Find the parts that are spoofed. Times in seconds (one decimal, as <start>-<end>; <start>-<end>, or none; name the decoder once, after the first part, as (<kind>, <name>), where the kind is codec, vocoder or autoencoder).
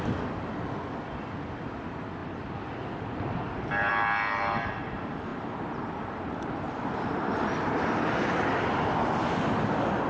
2.2-3.9 (vocoder, BigVGAN v2)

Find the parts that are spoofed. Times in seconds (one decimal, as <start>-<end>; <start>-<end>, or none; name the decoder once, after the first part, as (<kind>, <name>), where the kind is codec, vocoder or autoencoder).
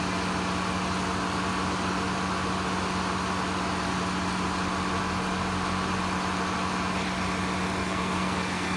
7.8-8.8 (codec, SNAC)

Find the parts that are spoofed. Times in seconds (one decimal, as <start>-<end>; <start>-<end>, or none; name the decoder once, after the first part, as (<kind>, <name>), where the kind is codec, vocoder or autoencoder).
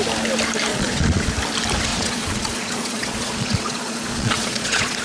0.7-1.3 (vocoder, Vocos); 1.9-5.0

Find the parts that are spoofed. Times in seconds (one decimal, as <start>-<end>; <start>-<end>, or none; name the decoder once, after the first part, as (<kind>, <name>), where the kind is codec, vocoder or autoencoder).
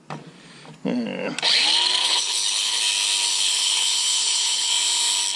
2.0-2.8 (codec, HILCodec); 3.3-4.7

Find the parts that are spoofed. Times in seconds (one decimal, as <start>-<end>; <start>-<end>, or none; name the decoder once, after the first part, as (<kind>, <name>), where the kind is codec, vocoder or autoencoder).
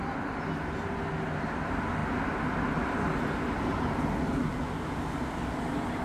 none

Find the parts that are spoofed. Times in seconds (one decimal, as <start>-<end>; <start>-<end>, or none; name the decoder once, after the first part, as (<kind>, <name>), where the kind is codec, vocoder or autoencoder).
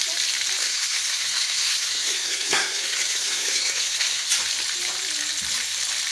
0.6-4.3 (codec, SNAC)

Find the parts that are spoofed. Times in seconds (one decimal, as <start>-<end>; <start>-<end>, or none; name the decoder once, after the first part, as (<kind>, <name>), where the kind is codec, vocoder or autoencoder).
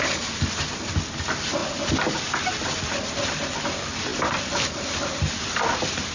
none